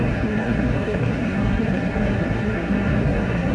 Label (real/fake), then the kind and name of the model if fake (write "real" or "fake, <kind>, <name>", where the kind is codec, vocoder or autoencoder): fake, codec, SNAC